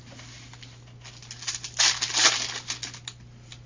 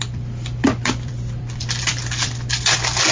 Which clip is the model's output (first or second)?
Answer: second